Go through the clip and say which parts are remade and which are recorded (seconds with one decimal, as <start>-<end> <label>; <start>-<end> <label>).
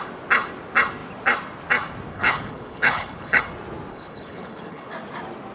0.0-2.1 recorded; 2.1-3.4 remade; 3.4-3.9 recorded; 3.9-4.9 remade; 4.9-5.5 recorded